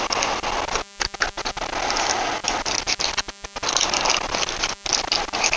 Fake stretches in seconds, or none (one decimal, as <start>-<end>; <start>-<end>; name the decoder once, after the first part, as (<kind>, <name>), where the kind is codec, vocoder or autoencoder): none

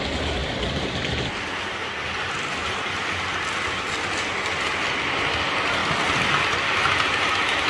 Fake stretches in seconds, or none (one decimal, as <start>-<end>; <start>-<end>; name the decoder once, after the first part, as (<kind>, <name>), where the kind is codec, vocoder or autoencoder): none